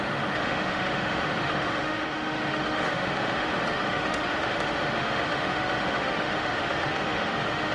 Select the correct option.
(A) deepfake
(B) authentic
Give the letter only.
A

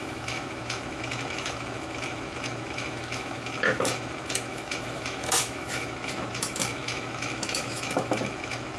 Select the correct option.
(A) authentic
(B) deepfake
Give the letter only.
B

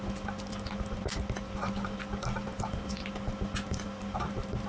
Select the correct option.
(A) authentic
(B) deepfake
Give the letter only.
A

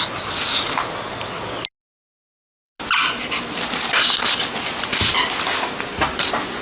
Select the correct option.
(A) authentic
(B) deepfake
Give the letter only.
A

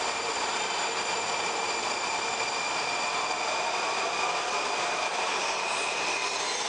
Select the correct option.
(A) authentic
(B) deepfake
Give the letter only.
A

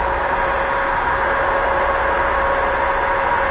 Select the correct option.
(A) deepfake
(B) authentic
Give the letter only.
B